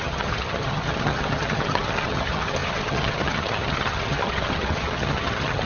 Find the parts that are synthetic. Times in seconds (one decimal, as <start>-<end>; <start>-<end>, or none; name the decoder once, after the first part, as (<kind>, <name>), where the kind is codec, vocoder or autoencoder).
0.0-5.7 (vocoder, HiFi-GAN)